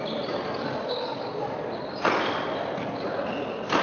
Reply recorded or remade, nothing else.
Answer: recorded